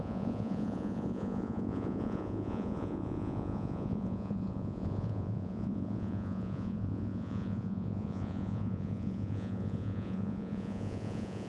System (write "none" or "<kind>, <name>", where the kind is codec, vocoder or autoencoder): vocoder, Vocos